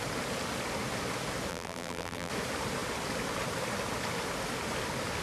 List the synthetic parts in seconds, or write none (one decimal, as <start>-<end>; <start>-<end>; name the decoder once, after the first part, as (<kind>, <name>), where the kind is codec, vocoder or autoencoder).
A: 1.5-2.3 (vocoder, BigVGAN v2)